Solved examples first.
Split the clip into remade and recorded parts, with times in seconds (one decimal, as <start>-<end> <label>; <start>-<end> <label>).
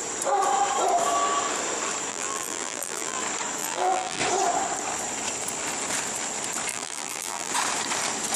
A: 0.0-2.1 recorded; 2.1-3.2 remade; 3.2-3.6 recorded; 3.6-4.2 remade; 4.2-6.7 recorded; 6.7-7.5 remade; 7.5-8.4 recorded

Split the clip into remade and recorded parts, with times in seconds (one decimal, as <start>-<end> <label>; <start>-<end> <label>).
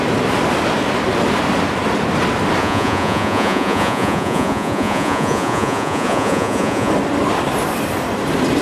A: 0.0-2.6 recorded; 2.6-6.9 remade; 6.9-8.6 recorded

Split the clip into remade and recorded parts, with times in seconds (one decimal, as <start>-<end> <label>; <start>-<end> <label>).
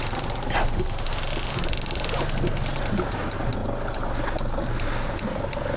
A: 0.0-5.8 recorded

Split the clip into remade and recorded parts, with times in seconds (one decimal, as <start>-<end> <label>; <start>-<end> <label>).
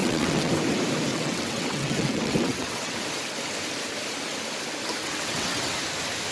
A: 0.0-0.5 remade; 0.5-1.1 recorded; 1.1-3.0 remade; 3.0-5.0 recorded; 5.0-5.7 remade; 5.7-6.3 recorded